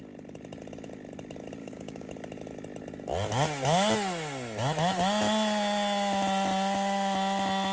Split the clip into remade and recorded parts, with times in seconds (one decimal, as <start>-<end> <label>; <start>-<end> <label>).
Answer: 0.0-1.6 recorded; 1.6-2.1 remade; 2.1-7.7 recorded